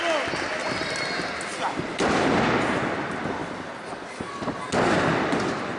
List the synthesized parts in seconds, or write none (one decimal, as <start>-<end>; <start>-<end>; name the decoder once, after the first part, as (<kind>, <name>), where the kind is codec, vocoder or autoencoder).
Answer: none